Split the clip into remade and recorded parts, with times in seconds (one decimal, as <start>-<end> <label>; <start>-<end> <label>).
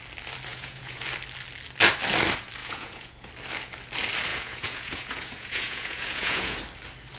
0.0-0.5 recorded; 0.5-1.0 remade; 1.0-2.6 recorded; 2.6-3.3 remade; 3.3-4.3 recorded; 4.3-6.6 remade; 6.6-7.2 recorded